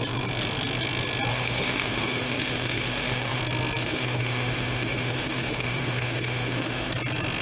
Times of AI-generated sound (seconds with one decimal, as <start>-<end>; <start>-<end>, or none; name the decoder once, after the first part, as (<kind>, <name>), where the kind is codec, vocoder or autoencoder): 1.3-3.4 (autoencoder, DAC-VAE); 3.8-6.9